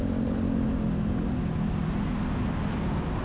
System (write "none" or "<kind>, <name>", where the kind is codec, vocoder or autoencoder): none